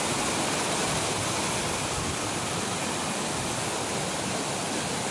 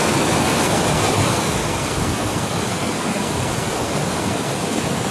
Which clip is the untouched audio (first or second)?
first